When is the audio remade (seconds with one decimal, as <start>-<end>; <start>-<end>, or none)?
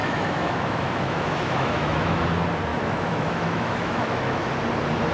0.0-2.2; 2.7-4.5